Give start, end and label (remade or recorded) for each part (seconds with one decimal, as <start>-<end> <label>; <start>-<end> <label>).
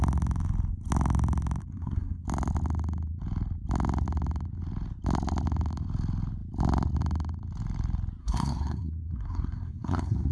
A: 0.0-1.6 recorded; 1.6-2.2 remade; 2.2-8.2 recorded; 8.2-10.3 remade